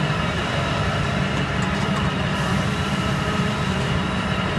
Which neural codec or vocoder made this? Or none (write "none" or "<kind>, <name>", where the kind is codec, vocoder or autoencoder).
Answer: vocoder, BigVGAN v2